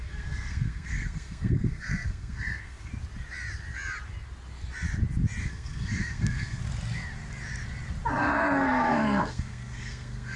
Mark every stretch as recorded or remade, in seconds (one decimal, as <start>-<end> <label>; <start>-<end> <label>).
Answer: 0.0-2.9 remade; 2.9-5.4 recorded; 5.4-6.6 remade; 6.6-8.2 recorded; 8.2-10.4 remade